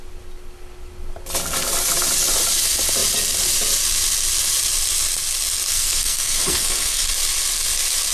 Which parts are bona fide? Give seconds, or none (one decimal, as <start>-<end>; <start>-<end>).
0.0-5.7; 7.1-8.1